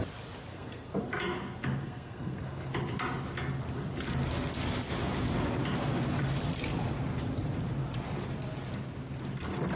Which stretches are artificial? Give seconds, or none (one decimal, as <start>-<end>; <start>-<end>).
0.5-1.0; 1.8-2.7